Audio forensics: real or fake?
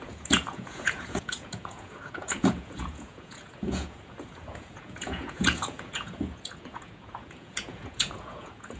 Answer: fake